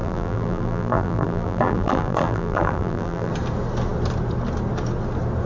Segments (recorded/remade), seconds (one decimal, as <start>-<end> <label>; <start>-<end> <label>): 0.0-3.3 remade; 3.3-5.5 recorded